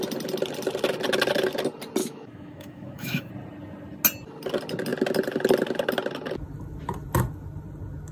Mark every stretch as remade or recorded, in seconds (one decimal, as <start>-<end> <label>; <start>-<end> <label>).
0.0-2.0 recorded; 2.0-3.3 remade; 3.3-8.1 recorded